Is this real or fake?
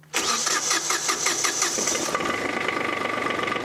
real